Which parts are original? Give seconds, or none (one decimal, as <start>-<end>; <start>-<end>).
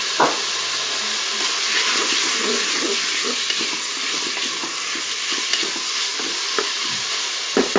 0.0-2.4; 6.1-7.8